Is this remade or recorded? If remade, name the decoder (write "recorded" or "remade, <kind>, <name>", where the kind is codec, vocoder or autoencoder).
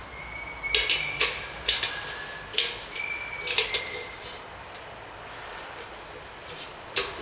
recorded